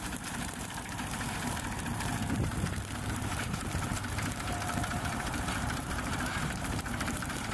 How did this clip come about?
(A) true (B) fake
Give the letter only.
B